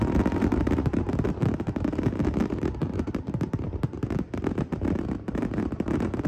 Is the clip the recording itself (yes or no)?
no